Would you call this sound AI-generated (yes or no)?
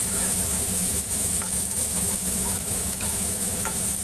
yes